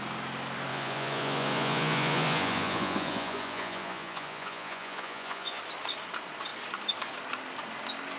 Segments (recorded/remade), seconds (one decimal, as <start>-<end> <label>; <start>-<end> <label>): 0.0-0.7 recorded; 0.7-5.6 remade; 5.6-8.2 recorded